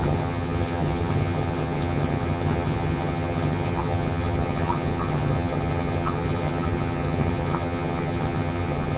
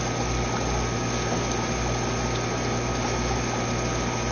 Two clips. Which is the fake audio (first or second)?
first